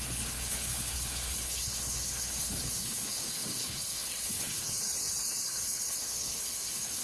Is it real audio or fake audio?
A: fake